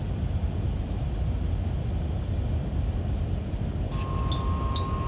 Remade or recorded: recorded